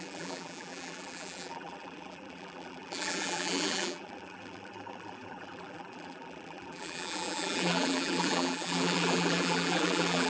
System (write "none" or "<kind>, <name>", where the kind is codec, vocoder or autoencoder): vocoder, BigVGAN v2